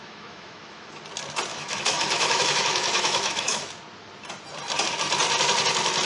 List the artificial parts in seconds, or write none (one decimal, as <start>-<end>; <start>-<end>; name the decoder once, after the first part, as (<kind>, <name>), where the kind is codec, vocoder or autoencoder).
0.0-0.9 (autoencoder, DAC-VAE); 1.5-3.7